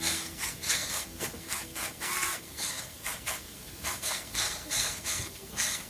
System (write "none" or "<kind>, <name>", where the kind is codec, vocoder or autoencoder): codec, SNAC